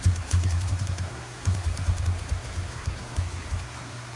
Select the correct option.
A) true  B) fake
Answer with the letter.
B